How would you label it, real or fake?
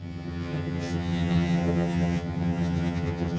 fake